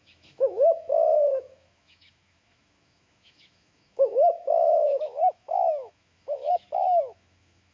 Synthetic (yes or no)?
yes